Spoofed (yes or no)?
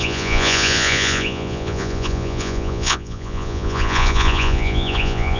yes